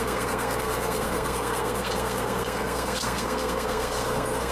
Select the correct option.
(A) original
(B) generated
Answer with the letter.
B